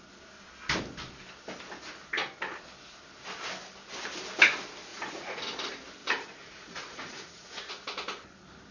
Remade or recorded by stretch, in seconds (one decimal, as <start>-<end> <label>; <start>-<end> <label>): 0.0-4.9 recorded; 4.9-5.4 remade; 5.4-6.0 recorded; 6.0-7.7 remade; 7.7-8.7 recorded